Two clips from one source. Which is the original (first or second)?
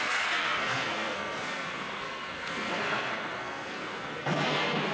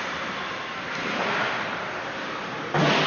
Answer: second